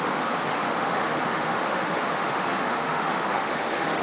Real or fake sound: fake